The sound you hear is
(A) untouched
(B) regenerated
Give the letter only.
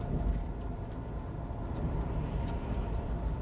A